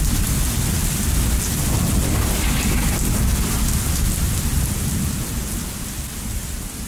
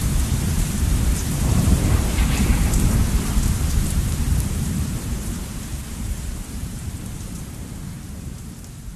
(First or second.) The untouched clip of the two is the first